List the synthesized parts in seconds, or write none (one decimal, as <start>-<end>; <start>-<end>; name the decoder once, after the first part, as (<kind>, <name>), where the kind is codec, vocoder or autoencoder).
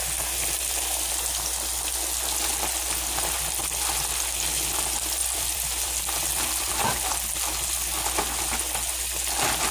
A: 5.2-6.7 (vocoder, BigVGAN v2)